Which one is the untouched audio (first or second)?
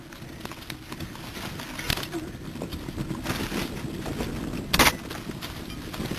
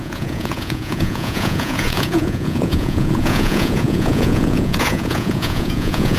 first